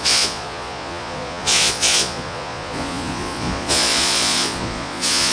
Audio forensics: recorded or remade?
remade